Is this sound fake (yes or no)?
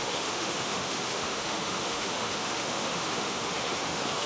yes